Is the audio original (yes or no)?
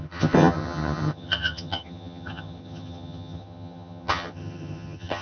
no